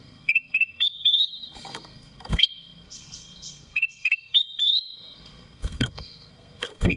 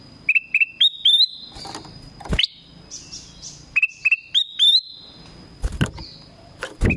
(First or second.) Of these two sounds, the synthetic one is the first